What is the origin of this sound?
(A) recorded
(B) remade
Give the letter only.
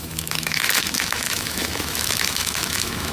B